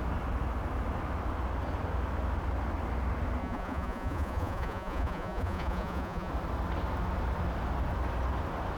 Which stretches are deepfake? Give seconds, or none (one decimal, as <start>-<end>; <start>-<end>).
3.4-6.3